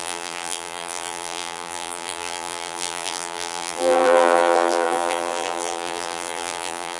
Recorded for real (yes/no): no